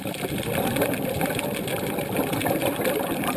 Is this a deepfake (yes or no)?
yes